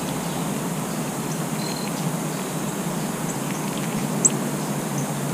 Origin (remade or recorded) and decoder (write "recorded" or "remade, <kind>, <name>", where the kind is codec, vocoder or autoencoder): recorded